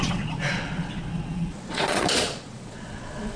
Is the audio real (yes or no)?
no